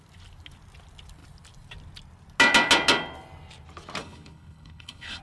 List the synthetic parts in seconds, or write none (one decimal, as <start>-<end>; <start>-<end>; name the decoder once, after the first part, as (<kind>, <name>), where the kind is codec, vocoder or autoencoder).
4.0-5.2 (codec, HILCodec)

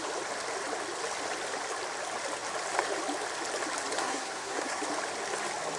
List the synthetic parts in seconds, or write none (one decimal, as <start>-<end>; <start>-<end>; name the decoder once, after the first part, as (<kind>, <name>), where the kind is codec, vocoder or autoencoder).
4.0-4.8 (codec, SNAC)

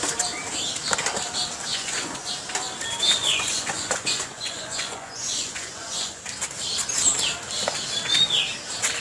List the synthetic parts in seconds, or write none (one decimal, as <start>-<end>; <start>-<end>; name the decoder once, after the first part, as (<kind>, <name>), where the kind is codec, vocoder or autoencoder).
1.7-2.3 (vocoder, Vocos); 3.2-6.2

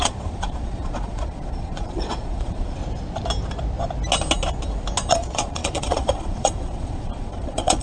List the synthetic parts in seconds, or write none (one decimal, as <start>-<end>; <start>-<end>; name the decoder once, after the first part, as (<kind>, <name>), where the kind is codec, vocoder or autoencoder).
0.0-2.8 (vocoder, Vocos); 5.1-7.8

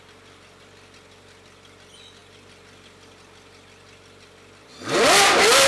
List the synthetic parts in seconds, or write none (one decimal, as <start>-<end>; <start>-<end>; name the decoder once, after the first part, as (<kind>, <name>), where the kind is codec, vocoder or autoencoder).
none